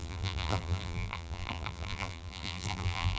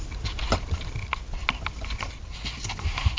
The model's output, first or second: first